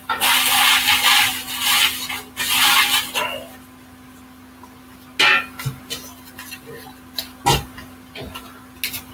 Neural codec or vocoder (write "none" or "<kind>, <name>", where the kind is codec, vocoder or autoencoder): none